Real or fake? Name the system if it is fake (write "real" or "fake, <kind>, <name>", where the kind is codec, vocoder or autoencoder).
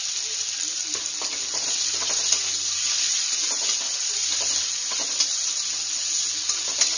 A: real